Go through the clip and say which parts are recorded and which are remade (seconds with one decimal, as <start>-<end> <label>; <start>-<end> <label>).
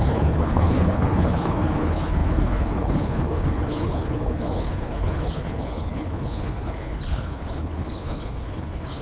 0.0-9.0 remade